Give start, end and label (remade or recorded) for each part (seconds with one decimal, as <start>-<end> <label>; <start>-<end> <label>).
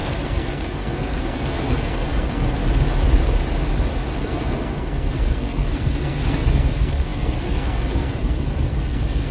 0.0-2.6 remade; 2.6-4.2 recorded; 4.2-9.3 remade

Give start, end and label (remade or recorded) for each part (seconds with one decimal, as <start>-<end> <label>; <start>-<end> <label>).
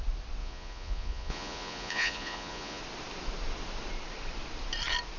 0.0-0.4 recorded; 0.4-2.8 remade; 2.8-5.2 recorded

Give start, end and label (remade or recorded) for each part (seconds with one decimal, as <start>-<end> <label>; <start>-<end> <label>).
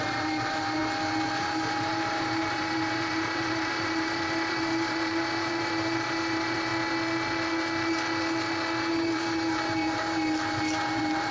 0.0-0.8 remade; 0.8-1.3 recorded; 1.3-6.7 remade; 6.7-8.9 recorded; 8.9-11.3 remade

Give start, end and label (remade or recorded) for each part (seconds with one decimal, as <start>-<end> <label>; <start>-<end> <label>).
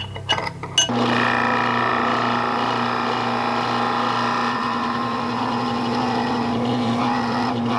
0.0-7.8 recorded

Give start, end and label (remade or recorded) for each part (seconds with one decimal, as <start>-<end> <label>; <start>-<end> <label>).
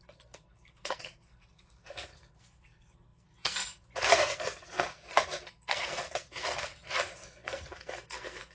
0.0-8.5 remade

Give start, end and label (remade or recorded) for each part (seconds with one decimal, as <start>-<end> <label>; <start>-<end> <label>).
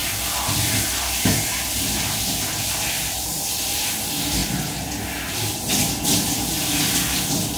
0.0-4.0 remade; 4.0-7.6 recorded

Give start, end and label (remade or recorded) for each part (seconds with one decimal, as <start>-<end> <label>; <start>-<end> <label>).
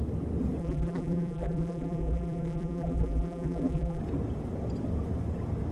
0.0-0.6 recorded; 0.6-4.0 remade; 4.0-5.7 recorded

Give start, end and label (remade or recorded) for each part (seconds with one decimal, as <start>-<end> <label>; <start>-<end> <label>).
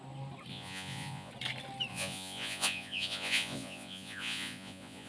0.0-0.5 recorded; 0.5-1.3 remade; 1.3-1.9 recorded; 1.9-5.1 remade